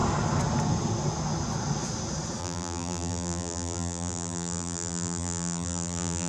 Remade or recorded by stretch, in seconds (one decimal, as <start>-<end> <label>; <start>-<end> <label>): 0.0-2.4 recorded; 2.4-6.3 remade